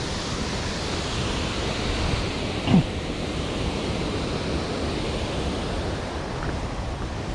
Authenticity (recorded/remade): recorded